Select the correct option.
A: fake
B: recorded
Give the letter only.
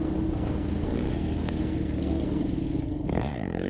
A